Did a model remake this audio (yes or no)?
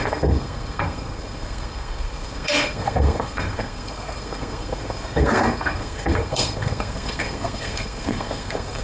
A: yes